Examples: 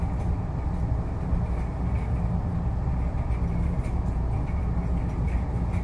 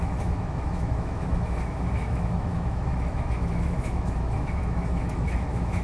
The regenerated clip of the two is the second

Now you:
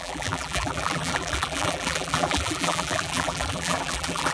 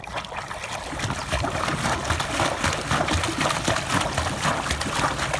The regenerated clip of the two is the first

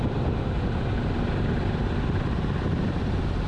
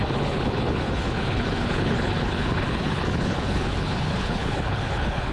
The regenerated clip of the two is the second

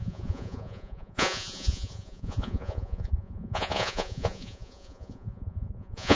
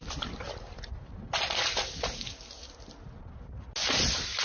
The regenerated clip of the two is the first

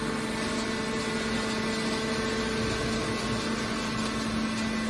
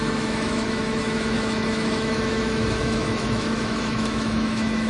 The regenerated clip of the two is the second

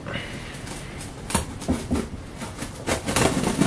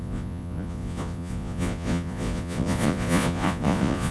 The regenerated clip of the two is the second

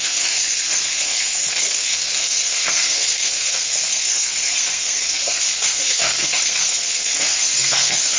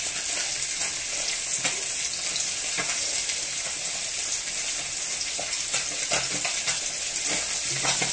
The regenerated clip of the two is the first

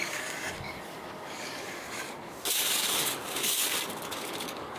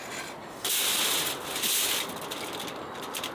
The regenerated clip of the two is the first